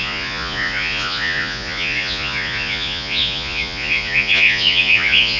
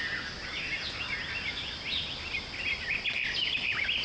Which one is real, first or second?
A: second